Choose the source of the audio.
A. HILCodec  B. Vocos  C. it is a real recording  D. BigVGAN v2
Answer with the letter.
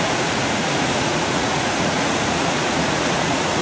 B